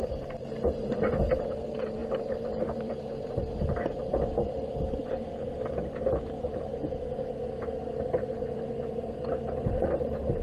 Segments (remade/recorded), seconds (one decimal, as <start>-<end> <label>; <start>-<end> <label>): 0.0-6.7 remade; 6.7-8.1 recorded; 8.1-10.4 remade